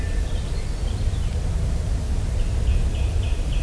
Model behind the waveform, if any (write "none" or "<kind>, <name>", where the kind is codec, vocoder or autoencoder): none